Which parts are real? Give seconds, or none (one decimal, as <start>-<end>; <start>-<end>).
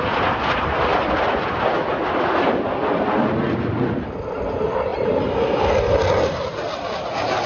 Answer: 0.0-7.5